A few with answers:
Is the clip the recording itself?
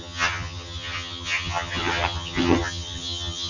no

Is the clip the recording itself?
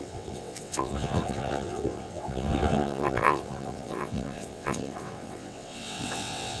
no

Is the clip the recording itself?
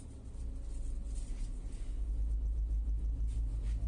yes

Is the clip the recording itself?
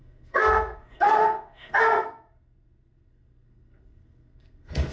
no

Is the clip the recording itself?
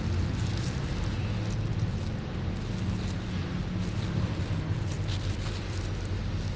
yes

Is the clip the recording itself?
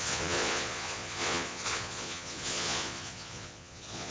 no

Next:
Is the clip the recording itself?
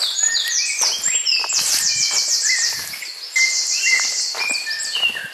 yes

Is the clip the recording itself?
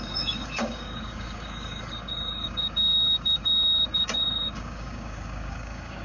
no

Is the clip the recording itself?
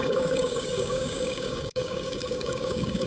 no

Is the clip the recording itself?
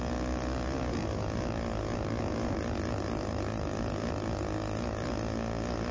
yes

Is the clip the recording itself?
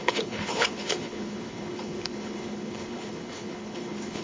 no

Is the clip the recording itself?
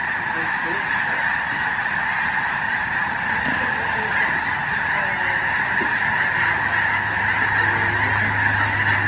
yes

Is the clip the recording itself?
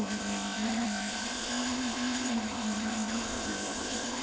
no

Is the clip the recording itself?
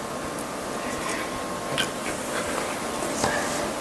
yes